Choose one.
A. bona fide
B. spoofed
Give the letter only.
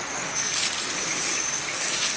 A